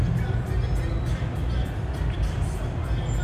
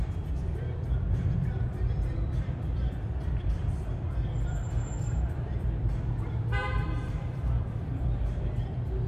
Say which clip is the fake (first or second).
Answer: second